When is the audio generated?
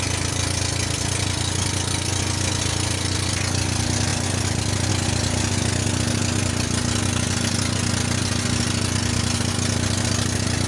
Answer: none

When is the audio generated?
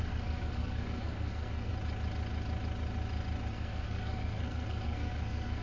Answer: 0.0-1.7 (codec, SNAC); 3.5-5.6